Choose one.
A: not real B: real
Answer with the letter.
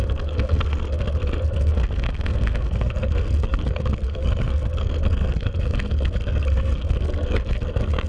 A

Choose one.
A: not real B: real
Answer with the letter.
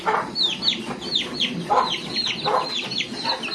B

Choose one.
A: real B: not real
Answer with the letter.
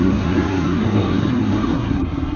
B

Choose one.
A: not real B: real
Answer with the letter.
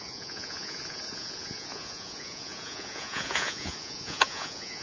A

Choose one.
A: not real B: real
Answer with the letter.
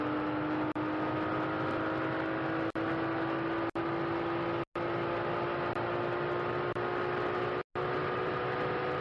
B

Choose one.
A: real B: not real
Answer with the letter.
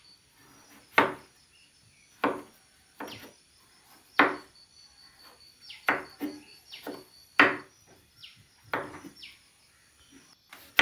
A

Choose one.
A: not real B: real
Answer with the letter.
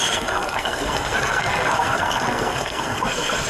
A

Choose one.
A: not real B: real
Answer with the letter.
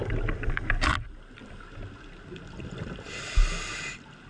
B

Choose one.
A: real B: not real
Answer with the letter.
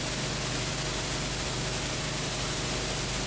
A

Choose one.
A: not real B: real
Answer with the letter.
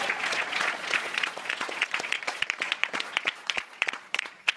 A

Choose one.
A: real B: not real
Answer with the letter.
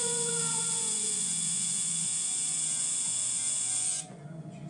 B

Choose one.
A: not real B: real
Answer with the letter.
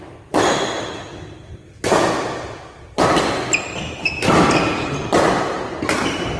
B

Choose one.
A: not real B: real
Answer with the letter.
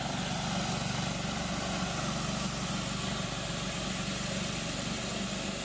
B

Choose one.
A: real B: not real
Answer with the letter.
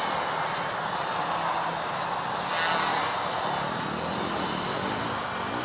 A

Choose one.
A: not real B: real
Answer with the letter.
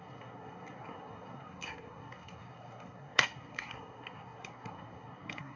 A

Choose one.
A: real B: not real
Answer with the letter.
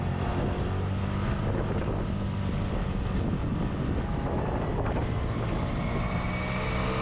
A